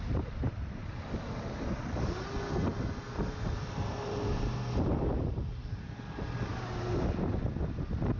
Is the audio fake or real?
real